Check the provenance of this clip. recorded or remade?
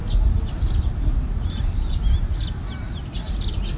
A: recorded